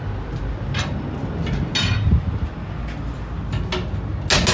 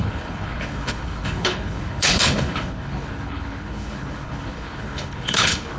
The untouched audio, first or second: first